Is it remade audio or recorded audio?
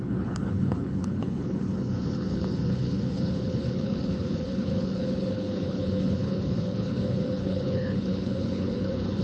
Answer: remade